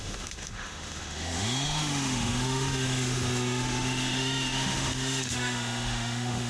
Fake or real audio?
fake